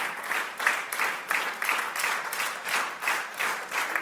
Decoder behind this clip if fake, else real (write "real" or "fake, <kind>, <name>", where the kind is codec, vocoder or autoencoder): real